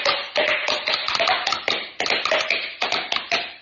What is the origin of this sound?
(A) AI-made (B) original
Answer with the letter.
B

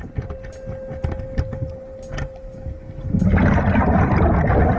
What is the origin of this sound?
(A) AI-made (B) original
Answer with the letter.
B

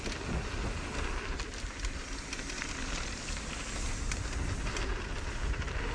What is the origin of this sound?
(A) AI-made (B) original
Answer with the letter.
B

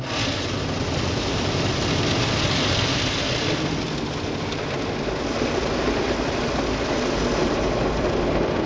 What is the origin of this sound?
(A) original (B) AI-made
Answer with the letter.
A